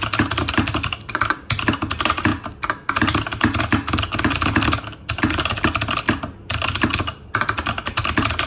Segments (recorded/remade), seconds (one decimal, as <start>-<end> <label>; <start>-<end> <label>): 0.0-8.5 recorded